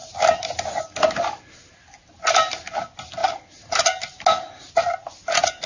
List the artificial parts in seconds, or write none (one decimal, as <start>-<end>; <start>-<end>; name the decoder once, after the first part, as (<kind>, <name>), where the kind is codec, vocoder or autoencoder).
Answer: none